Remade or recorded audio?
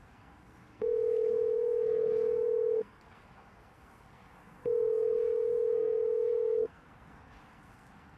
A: remade